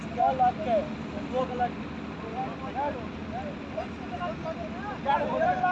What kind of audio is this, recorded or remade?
recorded